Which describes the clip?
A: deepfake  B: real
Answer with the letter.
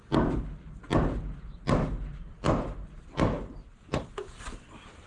B